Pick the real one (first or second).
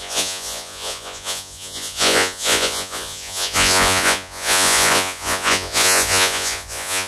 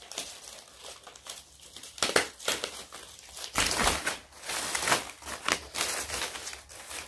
second